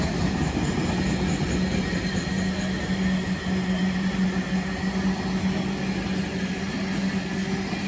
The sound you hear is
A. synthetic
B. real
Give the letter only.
B